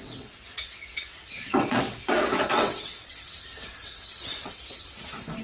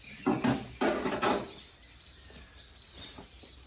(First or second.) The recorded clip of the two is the second